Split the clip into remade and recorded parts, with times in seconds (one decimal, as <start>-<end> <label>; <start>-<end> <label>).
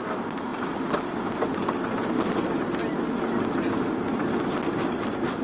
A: 0.0-5.4 recorded